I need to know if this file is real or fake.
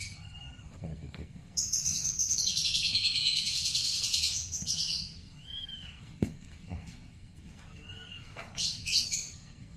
fake